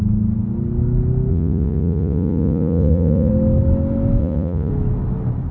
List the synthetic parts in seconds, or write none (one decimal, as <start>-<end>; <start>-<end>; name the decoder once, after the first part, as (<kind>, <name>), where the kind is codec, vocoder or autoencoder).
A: 1.3-3.3 (vocoder, Vocos); 4.2-4.7